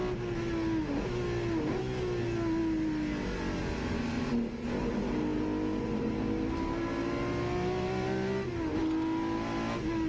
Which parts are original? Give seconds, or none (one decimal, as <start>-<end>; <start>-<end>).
0.0-10.1